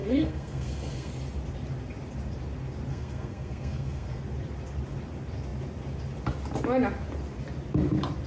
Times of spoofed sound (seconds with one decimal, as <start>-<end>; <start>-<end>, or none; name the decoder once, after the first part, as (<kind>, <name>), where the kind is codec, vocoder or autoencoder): 0.0-1.1 (codec, SNAC); 2.9-4.2